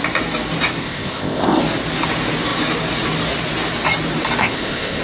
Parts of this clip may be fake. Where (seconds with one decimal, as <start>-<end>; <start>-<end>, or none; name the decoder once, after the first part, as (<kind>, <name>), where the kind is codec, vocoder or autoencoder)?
0.8-1.6 (codec, ZipCodec); 4.4-5.0